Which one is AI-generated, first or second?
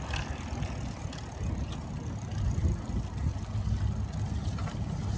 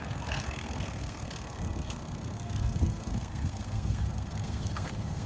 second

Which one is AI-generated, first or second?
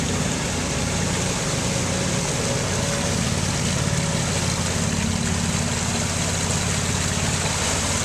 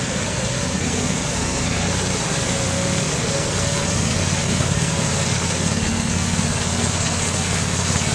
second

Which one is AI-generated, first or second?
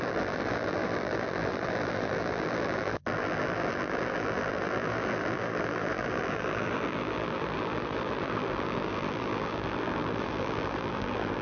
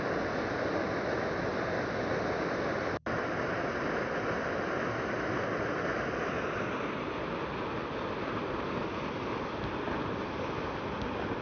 first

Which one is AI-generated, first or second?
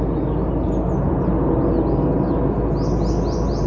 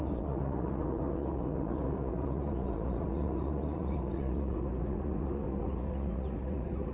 second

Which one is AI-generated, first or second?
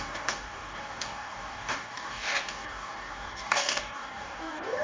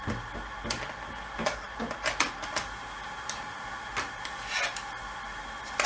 first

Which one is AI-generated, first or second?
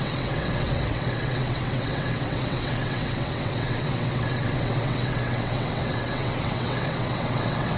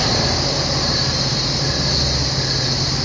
first